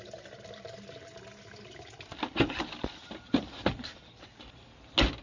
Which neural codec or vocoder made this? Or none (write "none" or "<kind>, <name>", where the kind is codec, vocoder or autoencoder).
none